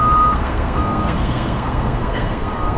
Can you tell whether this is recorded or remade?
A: remade